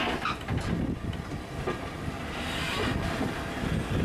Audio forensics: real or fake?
real